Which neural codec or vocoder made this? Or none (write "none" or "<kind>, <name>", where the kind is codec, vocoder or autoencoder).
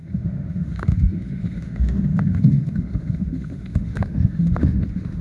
autoencoder, DAC-VAE